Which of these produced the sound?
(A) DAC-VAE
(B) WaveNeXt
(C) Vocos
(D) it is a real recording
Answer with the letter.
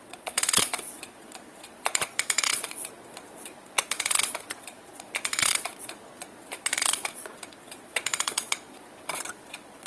C